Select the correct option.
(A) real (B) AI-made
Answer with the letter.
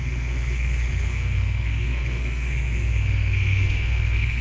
B